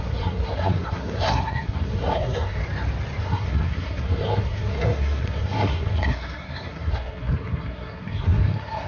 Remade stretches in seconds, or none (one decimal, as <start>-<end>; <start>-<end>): 0.0-2.6; 3.2-8.9